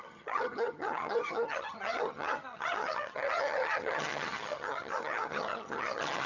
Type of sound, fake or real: fake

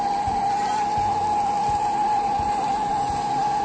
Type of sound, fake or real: real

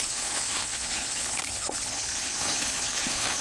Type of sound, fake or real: fake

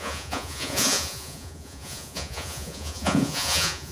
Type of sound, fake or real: fake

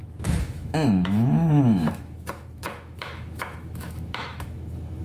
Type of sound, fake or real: fake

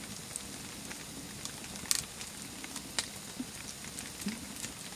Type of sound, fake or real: real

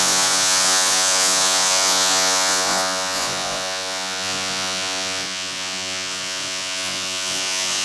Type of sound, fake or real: fake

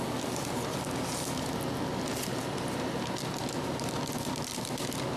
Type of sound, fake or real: real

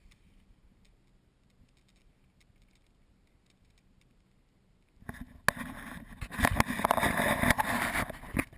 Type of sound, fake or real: real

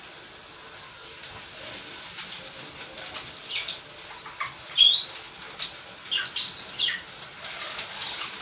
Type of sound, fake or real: real